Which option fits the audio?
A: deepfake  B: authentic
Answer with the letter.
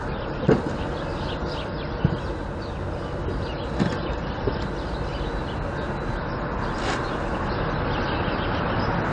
B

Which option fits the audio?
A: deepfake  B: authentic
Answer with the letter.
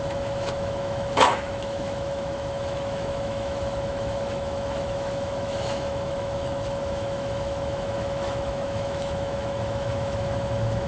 A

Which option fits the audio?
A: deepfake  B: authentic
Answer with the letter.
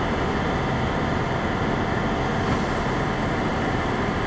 B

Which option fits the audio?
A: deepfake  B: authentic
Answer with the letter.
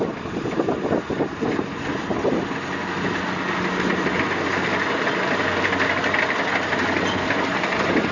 B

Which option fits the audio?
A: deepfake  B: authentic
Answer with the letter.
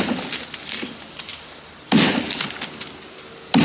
B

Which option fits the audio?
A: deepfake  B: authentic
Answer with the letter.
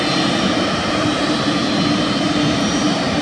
B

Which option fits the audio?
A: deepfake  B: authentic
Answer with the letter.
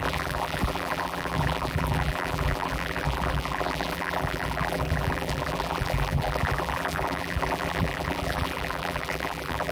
A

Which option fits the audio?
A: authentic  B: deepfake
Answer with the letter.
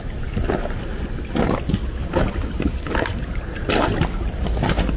A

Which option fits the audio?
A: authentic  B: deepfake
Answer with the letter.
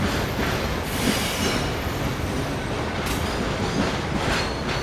A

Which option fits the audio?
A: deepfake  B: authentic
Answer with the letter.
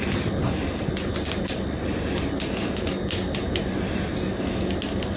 B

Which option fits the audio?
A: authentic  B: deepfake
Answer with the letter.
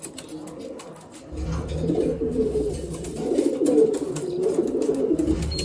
A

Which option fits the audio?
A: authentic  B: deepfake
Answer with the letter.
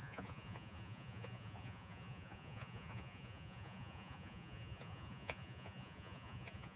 B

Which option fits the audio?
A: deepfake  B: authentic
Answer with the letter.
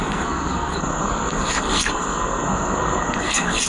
A